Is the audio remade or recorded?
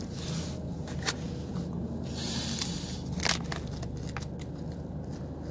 recorded